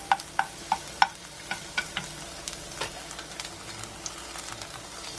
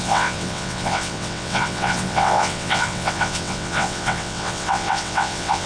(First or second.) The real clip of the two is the first